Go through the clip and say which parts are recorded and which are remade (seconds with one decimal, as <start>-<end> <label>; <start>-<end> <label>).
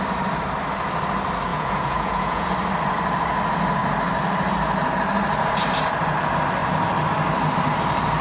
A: 0.0-1.5 recorded; 1.5-2.5 remade; 2.5-8.2 recorded